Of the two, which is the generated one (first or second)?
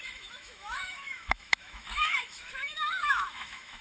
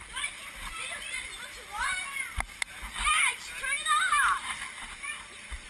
first